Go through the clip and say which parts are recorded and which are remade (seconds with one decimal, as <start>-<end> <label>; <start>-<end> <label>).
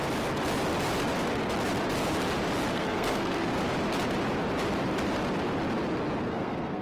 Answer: 0.0-2.7 recorded; 2.7-3.5 remade; 3.5-6.2 recorded; 6.2-6.8 remade